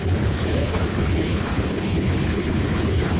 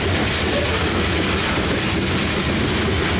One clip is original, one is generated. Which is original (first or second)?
second